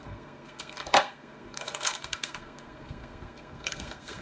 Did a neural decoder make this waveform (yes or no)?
yes